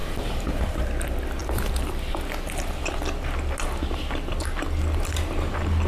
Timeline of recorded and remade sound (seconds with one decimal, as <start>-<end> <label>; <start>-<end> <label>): 0.0-0.6 remade; 0.6-1.4 recorded; 1.4-2.2 remade; 2.2-5.9 recorded